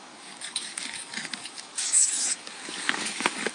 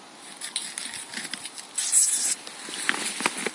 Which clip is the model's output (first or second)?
first